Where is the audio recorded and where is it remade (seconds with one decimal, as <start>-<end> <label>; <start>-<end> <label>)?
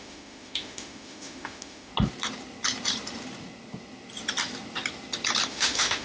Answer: 0.0-1.9 remade; 1.9-5.5 recorded; 5.5-6.0 remade